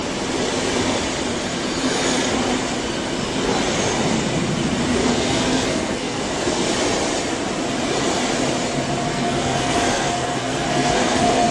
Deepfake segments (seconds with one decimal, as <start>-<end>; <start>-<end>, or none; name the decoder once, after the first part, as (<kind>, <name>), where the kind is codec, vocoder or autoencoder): 5.0-6.7 (codec, SNAC); 9.1-11.5